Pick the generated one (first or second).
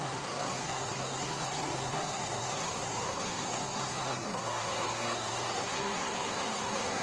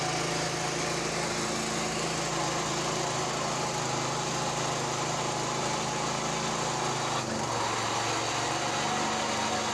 first